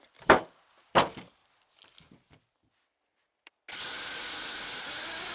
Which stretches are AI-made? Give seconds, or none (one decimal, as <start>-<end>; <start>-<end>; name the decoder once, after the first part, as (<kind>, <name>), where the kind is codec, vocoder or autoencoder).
none